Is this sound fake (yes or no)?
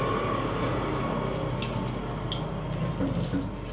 no